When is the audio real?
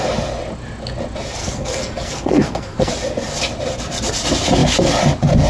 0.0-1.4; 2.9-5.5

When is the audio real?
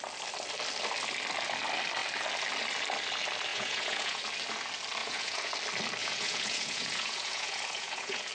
0.0-3.5; 4.2-5.0; 5.5-6.0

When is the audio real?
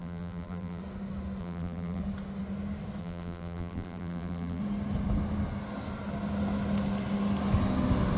0.8-1.4; 2.0-3.0; 4.6-8.2